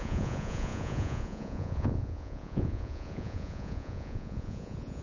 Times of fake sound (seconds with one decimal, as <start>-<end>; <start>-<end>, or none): 0.0-5.0